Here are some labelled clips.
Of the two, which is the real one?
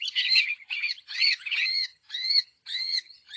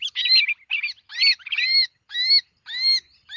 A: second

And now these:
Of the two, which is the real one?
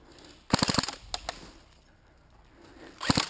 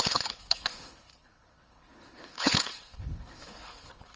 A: first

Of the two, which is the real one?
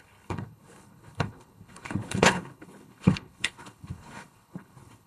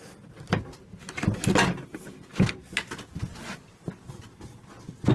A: second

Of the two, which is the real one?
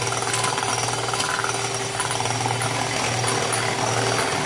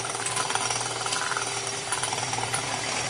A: first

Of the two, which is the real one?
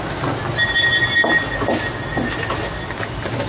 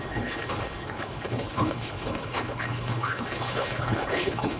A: first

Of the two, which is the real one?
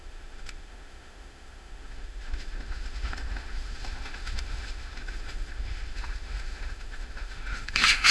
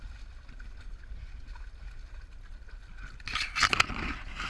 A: second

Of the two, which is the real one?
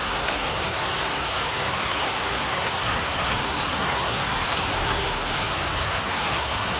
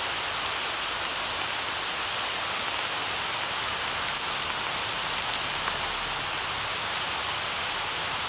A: second